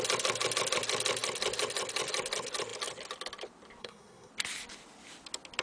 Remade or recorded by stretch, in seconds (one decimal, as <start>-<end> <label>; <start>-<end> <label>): 0.0-3.8 recorded; 3.8-4.3 remade; 4.3-5.6 recorded